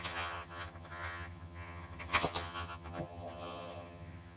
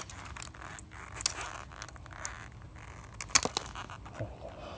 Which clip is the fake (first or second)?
first